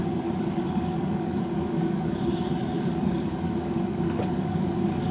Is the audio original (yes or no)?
no